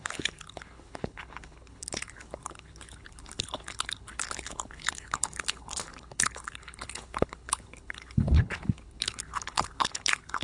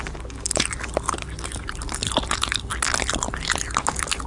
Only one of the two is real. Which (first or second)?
second